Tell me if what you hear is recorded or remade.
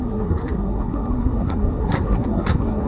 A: remade